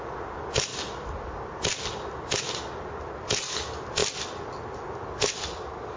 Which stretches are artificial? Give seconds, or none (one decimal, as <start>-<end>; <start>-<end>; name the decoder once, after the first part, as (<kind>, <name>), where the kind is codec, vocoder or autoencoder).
none